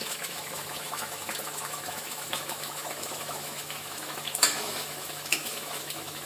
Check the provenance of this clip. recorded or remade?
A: remade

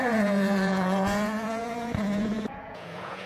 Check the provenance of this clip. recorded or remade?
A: remade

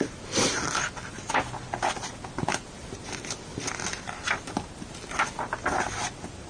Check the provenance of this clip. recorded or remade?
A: recorded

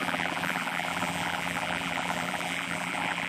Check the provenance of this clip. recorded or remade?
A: remade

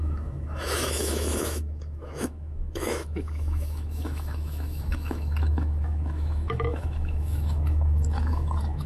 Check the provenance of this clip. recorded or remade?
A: remade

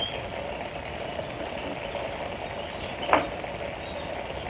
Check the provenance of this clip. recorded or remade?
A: recorded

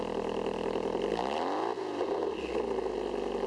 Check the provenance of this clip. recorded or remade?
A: recorded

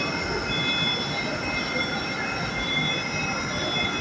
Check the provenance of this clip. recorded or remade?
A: recorded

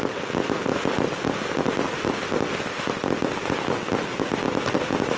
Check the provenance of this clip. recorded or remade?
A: recorded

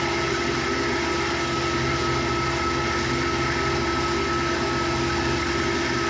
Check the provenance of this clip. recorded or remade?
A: recorded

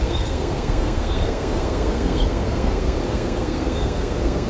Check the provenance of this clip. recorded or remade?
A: remade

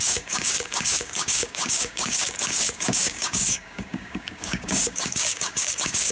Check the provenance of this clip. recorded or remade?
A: remade